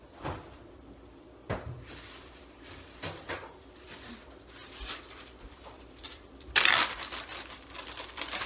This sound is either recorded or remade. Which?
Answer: remade